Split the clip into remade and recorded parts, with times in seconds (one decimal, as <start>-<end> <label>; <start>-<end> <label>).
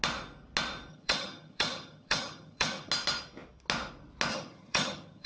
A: 0.0-0.9 recorded; 0.9-2.9 remade; 2.9-4.3 recorded; 4.3-5.3 remade